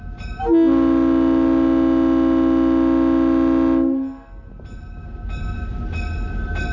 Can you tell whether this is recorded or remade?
recorded